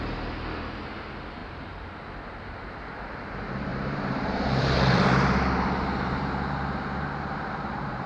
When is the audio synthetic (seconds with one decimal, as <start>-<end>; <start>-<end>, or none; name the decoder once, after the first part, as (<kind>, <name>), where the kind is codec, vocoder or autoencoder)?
1.4-2.0 (vocoder, BigVGAN v2); 3.7-6.2